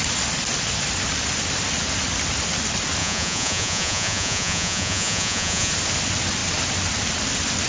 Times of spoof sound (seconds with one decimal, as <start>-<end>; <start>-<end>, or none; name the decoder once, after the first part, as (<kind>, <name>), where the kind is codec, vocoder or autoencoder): 3.0-5.7 (vocoder, Vocos)